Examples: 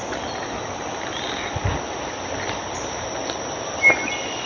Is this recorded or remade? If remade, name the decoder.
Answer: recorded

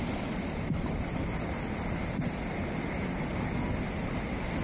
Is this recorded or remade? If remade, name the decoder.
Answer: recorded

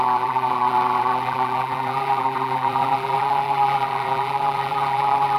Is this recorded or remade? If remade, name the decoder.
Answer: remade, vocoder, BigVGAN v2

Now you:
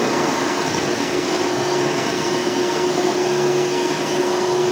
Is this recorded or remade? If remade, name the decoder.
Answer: remade, codec, SNAC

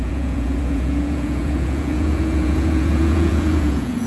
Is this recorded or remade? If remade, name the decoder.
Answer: remade, vocoder, Vocos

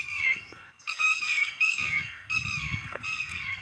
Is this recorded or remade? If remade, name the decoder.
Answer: remade, codec, SNAC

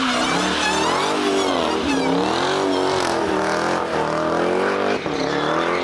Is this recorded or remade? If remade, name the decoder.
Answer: recorded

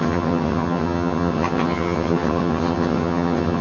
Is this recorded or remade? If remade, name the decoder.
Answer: remade, vocoder, HiFi-GAN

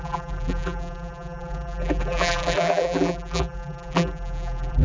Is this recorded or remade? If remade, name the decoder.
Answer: remade, vocoder, BigVGAN v2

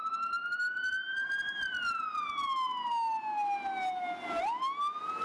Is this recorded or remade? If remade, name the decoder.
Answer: recorded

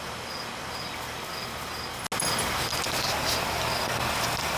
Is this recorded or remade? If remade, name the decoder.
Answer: recorded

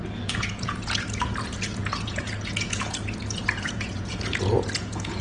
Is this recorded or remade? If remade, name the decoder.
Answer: remade, vocoder, Vocos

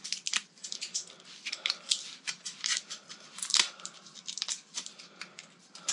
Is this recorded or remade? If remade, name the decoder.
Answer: remade, vocoder, BigVGAN v2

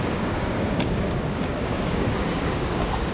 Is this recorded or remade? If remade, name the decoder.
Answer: remade, codec, DAC